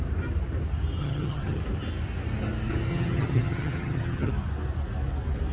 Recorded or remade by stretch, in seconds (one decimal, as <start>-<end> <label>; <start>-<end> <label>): 0.0-1.0 recorded; 1.0-1.6 remade; 1.6-2.9 recorded; 2.9-4.3 remade; 4.3-5.5 recorded